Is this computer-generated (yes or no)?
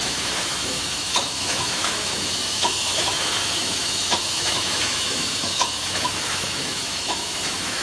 yes